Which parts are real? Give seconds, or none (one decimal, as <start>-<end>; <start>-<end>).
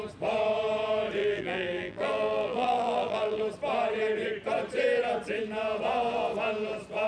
0.0-1.2; 3.4-7.1